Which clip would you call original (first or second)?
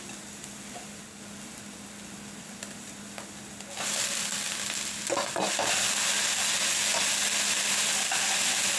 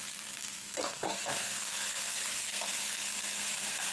first